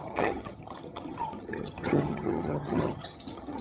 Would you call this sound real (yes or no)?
no